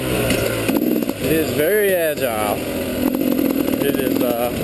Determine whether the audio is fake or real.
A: real